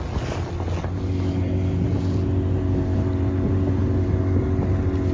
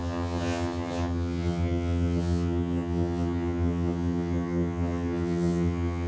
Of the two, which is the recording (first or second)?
first